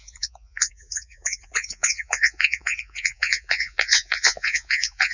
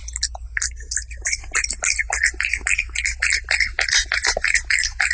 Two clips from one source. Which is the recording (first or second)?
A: second